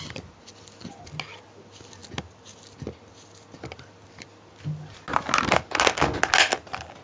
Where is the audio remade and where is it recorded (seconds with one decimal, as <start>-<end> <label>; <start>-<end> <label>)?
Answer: 0.0-7.0 recorded